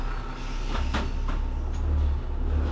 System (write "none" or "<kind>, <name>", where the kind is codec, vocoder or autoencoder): none